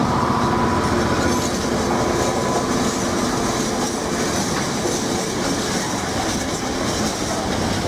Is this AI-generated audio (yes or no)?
no